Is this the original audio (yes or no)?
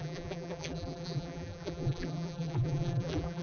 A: no